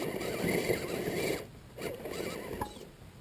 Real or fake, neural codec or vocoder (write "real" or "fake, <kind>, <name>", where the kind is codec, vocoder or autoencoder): real